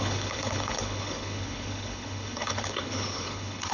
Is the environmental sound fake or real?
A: fake